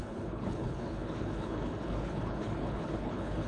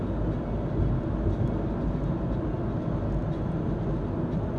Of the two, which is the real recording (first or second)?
second